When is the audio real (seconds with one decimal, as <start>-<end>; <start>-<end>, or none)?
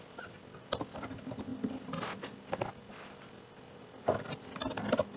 0.0-5.2